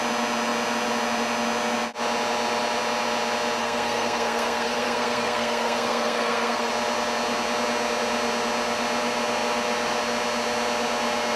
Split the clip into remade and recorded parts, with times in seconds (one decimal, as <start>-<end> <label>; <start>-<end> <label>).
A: 0.0-3.6 recorded; 3.6-6.7 remade; 6.7-11.4 recorded